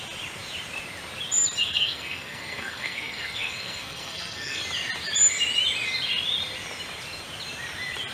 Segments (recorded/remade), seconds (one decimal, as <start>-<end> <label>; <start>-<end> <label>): 0.0-1.6 recorded; 1.6-4.6 remade; 4.6-8.1 recorded